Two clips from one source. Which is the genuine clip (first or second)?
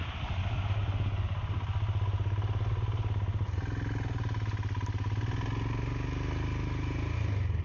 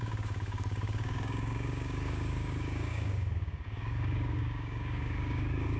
first